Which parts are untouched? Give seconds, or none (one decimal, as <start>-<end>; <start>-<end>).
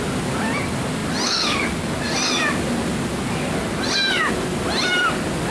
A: 0.0-5.5